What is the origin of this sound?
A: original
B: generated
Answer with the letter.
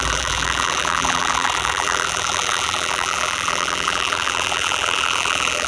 B